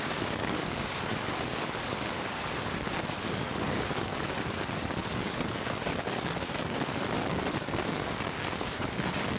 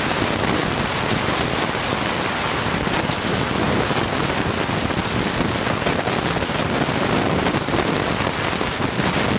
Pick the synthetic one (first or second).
first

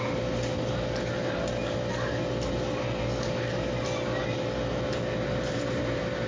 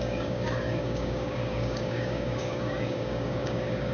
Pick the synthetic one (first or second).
second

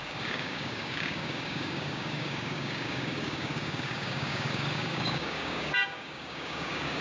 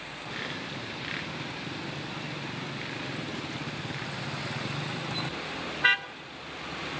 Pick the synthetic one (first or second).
first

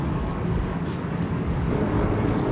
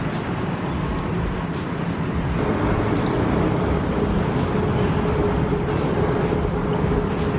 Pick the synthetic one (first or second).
first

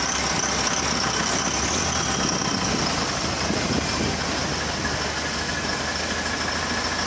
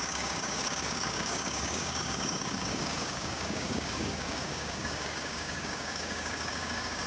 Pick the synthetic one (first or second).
second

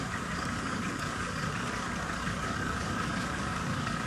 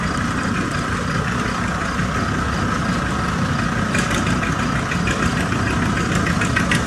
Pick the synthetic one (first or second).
first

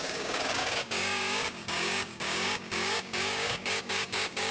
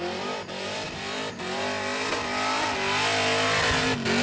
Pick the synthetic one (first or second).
first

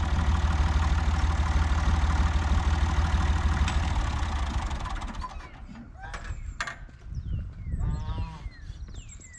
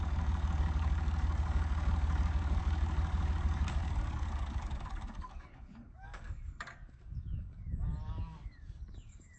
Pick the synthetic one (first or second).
second